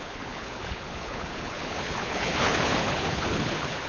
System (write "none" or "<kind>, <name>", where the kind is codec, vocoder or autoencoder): codec, HILCodec